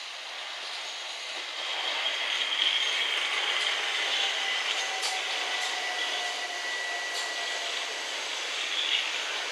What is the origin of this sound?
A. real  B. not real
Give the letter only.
A